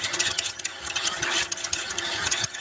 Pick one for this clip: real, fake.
fake